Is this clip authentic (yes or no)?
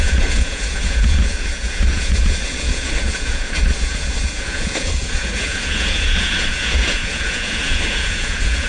no